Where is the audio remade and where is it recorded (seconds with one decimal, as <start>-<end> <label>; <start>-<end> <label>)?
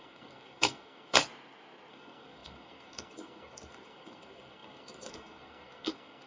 0.0-1.2 remade; 1.2-1.9 recorded; 1.9-6.3 remade